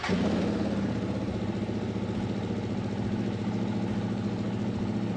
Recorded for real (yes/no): yes